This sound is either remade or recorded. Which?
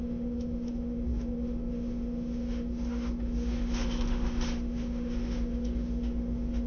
remade